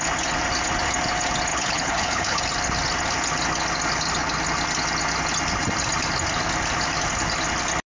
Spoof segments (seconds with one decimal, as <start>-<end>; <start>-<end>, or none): 1.5-2.4